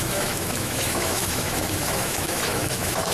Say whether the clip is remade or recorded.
remade